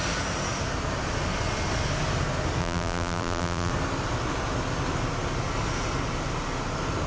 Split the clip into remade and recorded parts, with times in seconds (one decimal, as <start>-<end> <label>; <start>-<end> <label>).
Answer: 0.0-2.6 recorded; 2.6-3.7 remade; 3.7-7.1 recorded

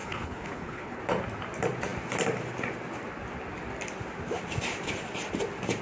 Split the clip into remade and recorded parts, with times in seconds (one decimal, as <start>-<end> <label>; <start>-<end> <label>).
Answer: 0.0-1.0 remade; 1.0-5.8 recorded